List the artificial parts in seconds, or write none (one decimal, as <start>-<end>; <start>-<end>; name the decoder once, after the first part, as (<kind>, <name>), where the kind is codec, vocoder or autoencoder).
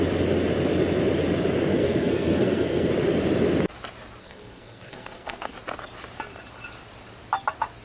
1.7-2.9 (codec, SNAC); 4.2-5.5